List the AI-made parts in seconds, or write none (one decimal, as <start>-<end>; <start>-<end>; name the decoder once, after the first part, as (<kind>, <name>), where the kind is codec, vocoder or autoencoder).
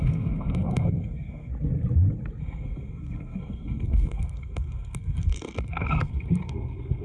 0.0-1.5 (codec, SNAC); 2.4-7.0